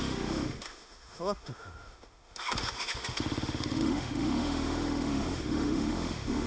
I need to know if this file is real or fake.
fake